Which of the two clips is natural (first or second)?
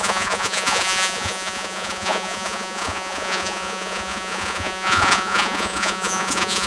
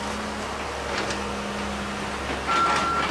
second